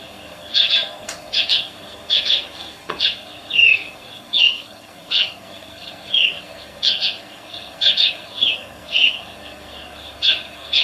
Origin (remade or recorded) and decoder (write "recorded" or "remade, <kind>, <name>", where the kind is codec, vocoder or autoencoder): remade, codec, SNAC